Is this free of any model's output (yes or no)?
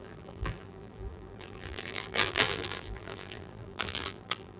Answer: no